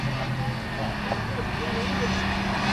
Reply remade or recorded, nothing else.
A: recorded